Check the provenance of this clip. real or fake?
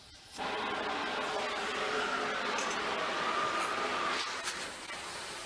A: real